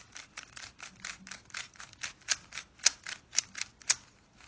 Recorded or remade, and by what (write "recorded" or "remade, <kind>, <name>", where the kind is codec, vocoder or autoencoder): recorded